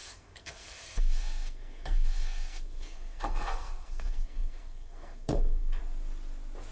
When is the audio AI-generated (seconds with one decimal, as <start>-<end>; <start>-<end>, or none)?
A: 0.0-5.8